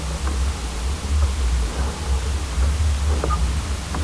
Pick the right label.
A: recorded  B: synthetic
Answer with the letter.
A